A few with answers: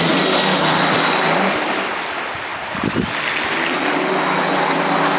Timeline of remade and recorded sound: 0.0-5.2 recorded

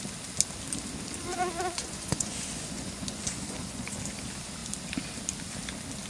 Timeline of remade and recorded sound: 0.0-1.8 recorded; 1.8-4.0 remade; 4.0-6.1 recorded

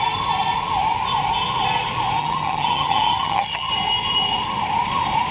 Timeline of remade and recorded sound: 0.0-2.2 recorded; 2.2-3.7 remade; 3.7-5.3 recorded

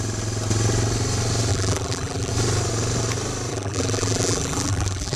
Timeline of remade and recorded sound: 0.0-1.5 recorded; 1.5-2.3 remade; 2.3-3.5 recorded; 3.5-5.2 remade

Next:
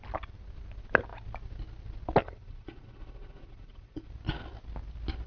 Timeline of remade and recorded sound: 0.0-2.2 recorded; 2.2-4.1 remade; 4.1-5.3 recorded

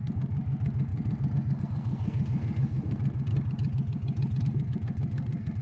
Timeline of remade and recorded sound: 0.0-3.3 remade; 3.3-4.4 recorded; 4.4-5.6 remade

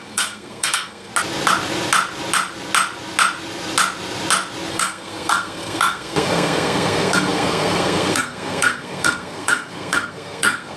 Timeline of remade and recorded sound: 0.0-1.1 remade; 1.1-4.7 recorded; 4.7-10.8 remade

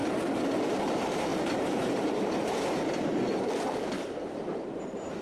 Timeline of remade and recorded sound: 0.0-0.9 recorded; 0.9-5.2 remade